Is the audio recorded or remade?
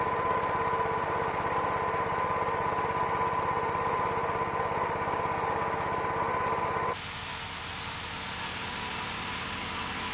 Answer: recorded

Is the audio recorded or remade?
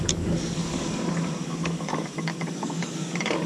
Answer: remade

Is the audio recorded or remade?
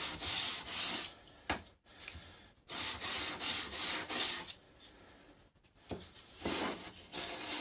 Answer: recorded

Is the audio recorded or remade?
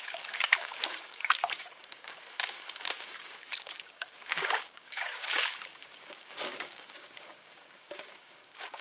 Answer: remade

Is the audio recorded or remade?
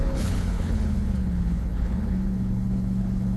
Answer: remade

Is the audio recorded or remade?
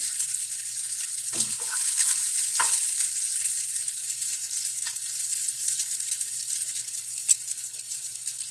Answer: remade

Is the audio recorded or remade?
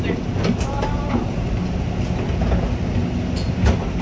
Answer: recorded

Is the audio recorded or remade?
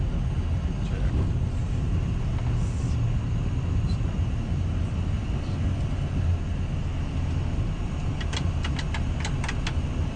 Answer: recorded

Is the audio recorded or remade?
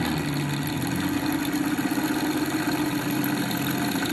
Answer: recorded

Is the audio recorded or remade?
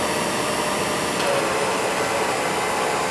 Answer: recorded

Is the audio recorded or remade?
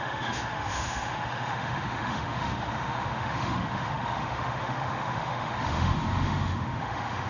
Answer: remade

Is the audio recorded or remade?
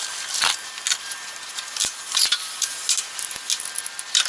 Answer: recorded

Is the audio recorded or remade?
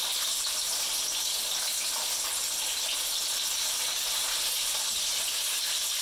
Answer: recorded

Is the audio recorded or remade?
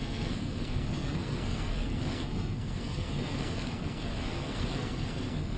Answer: remade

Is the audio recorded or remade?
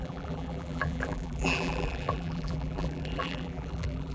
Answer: remade